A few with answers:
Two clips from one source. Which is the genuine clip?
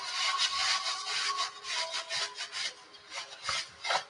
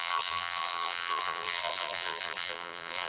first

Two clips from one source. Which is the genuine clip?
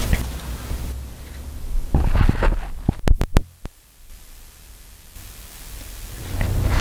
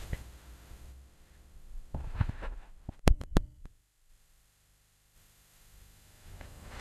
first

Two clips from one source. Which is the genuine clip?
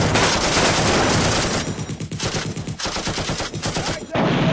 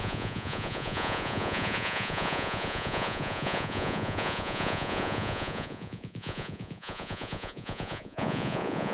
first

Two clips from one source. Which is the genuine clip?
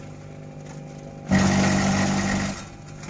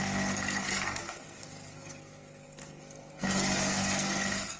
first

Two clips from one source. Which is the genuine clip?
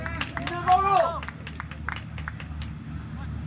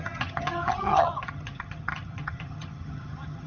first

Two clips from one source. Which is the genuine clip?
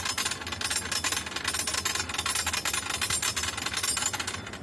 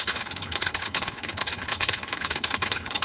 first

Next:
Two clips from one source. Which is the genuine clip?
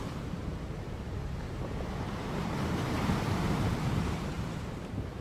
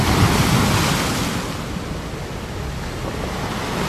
second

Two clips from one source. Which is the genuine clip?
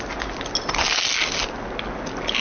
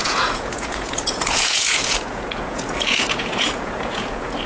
first